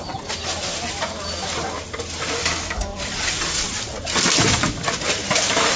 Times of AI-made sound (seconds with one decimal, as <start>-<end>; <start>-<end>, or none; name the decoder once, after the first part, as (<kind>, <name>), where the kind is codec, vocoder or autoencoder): 2.4-3.0 (codec, DAC)